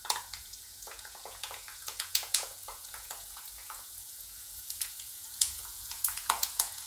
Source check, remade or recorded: remade